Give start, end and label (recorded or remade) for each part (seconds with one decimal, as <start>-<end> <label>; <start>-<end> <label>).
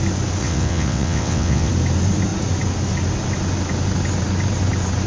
0.0-0.4 recorded; 0.4-1.7 remade; 1.7-5.1 recorded